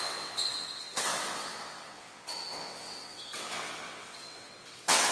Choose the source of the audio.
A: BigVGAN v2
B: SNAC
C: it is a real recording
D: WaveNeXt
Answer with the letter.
D